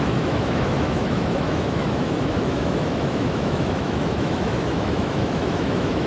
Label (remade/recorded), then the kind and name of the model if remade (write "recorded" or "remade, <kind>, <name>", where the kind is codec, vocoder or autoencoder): remade, autoencoder, DAC-VAE